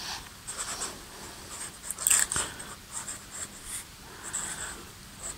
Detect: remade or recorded recorded